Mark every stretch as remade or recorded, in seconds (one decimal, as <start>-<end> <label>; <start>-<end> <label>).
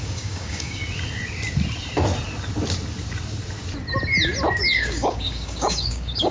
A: 0.0-0.8 remade; 0.8-4.6 recorded; 4.6-6.3 remade